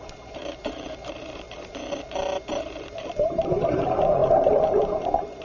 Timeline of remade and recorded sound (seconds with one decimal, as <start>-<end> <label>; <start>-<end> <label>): 0.0-5.4 remade